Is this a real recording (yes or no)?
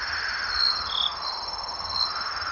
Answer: yes